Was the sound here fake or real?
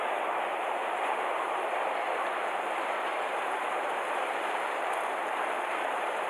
fake